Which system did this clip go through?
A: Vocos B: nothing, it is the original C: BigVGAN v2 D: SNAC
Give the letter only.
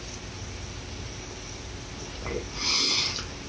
B